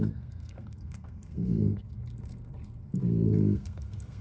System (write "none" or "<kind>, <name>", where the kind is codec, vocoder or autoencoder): codec, SNAC